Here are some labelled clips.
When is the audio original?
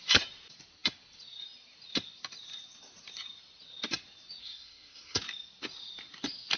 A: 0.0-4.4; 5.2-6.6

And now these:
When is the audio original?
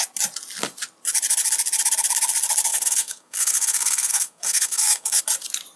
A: 0.0-2.7; 5.2-5.8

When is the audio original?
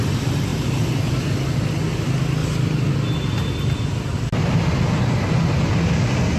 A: 0.0-6.4